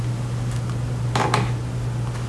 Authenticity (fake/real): real